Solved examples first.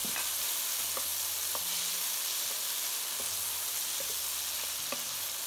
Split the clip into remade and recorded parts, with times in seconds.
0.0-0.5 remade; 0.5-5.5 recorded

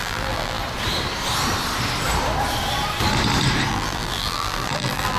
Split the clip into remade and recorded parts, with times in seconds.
0.0-0.6 remade; 0.6-3.7 recorded; 3.7-5.2 remade